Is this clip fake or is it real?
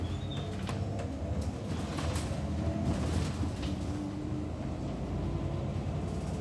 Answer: real